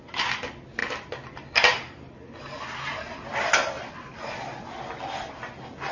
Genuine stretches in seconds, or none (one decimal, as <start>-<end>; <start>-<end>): 0.0-5.9